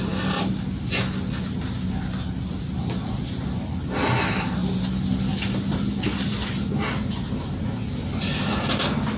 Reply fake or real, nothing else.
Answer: real